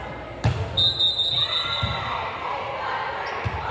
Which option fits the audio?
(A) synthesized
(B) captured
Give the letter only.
B